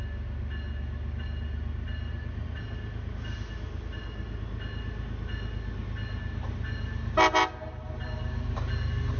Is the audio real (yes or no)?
yes